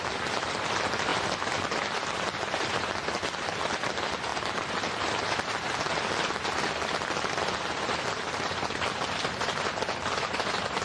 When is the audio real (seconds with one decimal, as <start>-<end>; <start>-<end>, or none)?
0.0-10.8